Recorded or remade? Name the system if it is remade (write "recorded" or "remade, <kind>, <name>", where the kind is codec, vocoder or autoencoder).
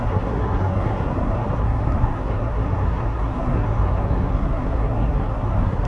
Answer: remade, codec, SNAC